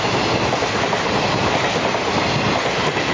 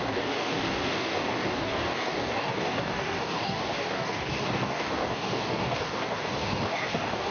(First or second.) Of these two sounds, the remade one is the second